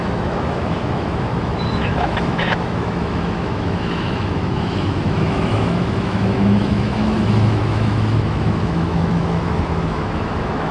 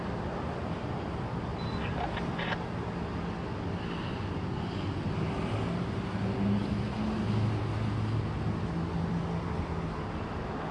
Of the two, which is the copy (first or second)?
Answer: first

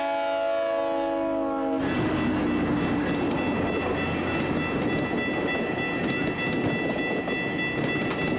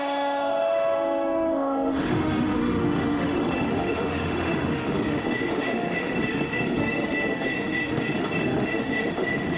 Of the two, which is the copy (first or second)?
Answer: second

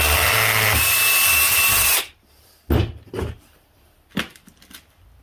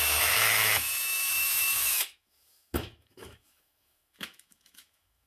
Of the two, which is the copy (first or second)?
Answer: second